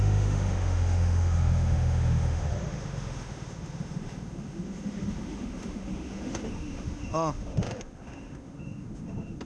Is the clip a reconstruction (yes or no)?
yes